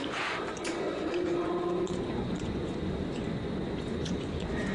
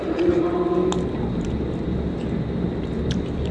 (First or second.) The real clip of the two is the second